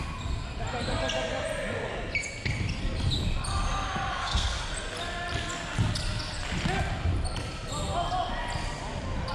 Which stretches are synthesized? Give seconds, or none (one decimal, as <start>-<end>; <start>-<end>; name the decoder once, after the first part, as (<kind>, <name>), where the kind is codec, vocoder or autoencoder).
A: 4.1-4.7 (codec, SNAC)

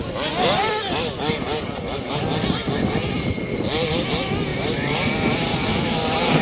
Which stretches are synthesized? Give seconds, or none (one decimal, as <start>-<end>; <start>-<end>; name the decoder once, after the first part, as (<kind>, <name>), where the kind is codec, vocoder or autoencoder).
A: 4.5-6.4 (vocoder, BigVGAN v2)

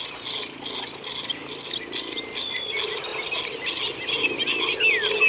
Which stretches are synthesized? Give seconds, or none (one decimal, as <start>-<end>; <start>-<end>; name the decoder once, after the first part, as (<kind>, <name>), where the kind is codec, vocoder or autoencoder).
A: none

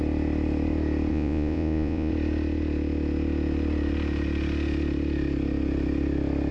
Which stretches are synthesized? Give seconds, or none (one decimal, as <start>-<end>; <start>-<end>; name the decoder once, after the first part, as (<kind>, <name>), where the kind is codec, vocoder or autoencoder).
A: 1.1-2.1 (vocoder, Vocos)

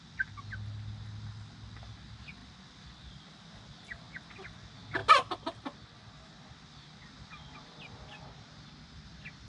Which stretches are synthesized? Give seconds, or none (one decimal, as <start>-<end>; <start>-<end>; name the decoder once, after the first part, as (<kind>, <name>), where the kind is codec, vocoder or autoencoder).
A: none

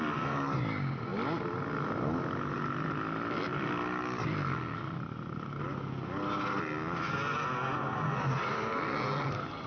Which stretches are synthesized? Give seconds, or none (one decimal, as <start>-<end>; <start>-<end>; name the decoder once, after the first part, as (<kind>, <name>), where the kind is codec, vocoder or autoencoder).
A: none